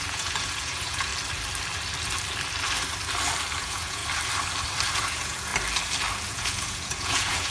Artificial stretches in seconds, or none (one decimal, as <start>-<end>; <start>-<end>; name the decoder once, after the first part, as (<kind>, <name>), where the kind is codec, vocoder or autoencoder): 0.0-1.1 (vocoder, Vocos); 3.6-4.0; 4.9-5.5; 6.3-7.5